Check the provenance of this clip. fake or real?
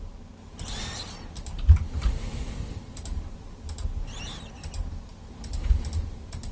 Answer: real